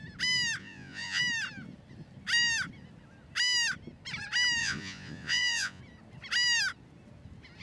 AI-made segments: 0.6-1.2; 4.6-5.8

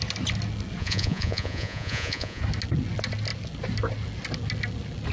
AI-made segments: 0.8-2.4

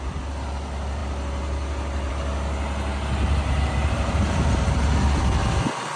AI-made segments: 3.8-4.7